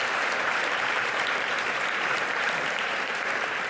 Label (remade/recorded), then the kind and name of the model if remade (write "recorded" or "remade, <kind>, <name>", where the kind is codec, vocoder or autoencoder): remade, vocoder, BigVGAN v2